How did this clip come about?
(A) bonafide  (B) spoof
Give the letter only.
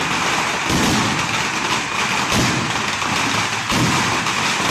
A